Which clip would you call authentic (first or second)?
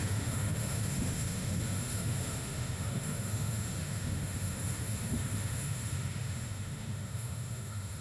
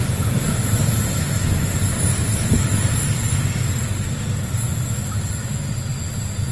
second